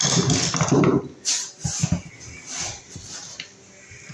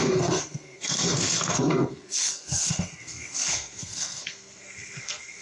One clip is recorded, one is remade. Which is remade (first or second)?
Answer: second